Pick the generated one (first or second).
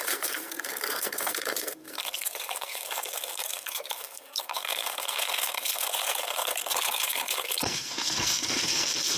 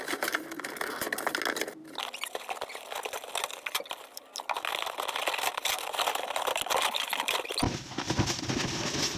first